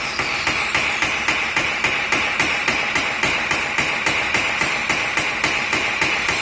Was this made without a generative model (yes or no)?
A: yes